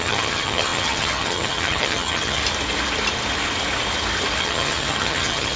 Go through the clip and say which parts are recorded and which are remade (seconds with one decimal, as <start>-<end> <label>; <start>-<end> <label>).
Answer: 0.0-2.4 remade; 2.4-4.4 recorded; 4.4-5.6 remade